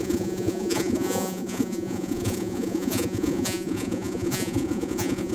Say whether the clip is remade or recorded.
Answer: remade